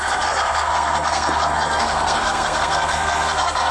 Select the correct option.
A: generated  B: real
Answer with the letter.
A